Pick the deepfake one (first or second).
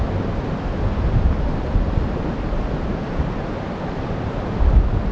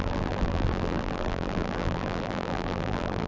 second